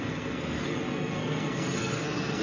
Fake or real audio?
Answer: fake